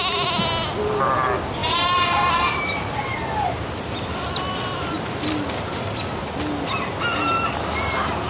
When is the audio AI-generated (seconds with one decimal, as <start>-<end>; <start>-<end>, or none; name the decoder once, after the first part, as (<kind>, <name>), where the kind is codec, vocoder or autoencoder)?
none